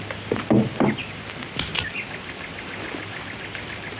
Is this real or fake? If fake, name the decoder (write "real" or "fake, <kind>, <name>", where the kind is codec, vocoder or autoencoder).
real